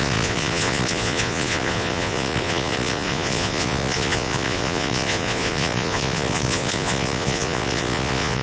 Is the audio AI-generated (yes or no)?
yes